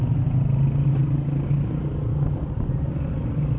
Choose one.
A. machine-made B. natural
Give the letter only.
B